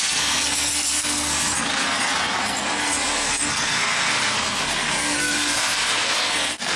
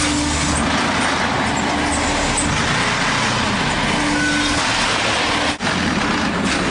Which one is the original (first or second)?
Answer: second